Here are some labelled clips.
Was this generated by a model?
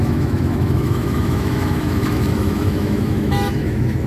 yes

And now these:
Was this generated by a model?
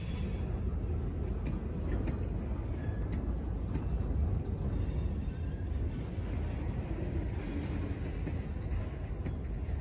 no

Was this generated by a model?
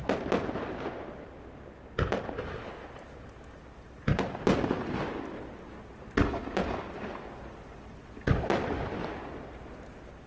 no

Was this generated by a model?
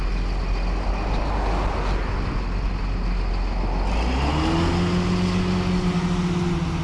no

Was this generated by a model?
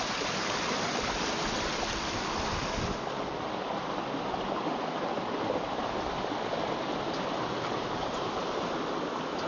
no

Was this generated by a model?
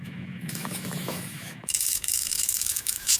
yes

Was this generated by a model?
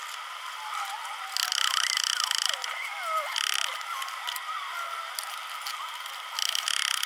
no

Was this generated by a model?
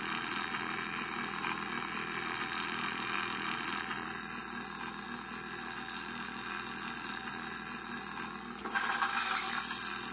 no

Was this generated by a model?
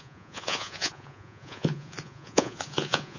yes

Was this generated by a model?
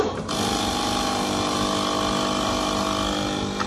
no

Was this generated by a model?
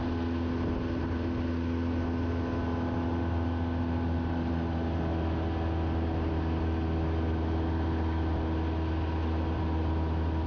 no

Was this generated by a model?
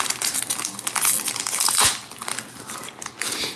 yes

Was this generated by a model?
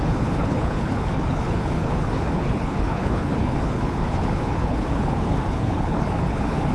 yes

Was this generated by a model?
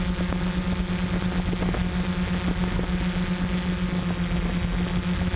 no